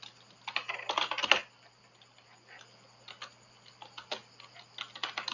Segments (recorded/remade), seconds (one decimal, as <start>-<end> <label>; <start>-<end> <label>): 0.0-5.3 recorded